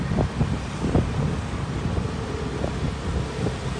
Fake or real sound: real